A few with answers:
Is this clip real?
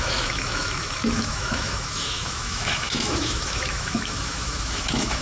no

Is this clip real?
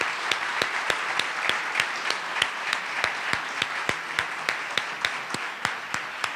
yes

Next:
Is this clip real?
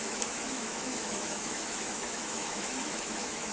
no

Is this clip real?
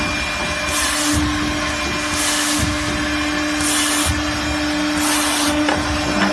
yes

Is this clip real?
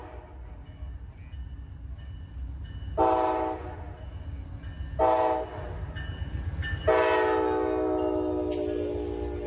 yes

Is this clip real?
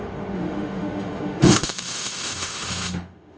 no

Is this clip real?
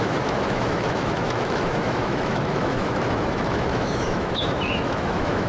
no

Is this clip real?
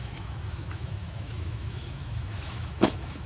no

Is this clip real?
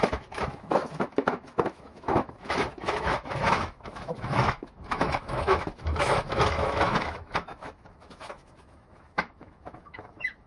no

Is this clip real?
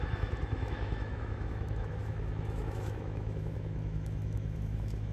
no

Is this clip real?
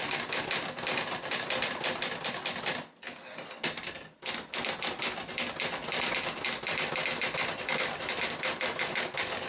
yes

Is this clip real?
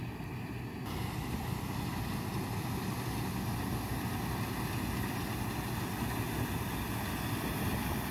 yes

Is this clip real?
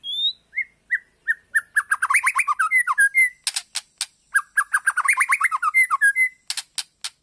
yes